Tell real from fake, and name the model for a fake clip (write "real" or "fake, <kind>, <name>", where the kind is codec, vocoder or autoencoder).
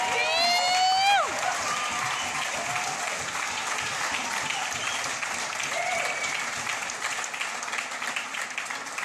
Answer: real